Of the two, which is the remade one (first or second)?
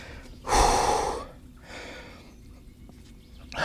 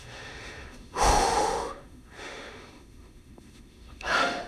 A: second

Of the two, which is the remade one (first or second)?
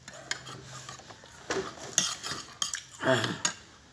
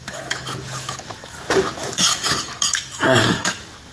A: second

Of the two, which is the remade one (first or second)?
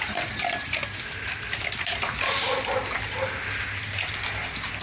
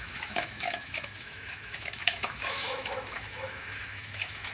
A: second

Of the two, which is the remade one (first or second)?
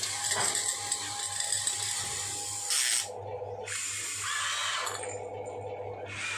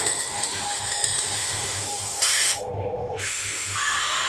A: second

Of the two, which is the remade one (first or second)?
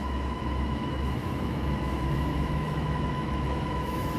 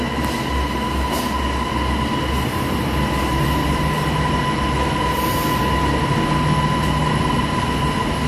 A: first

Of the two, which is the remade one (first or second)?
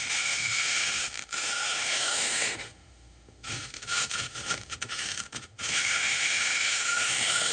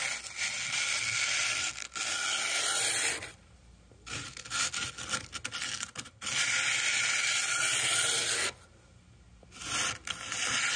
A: first